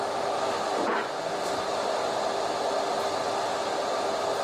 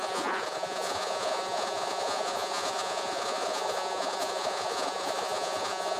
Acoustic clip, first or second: first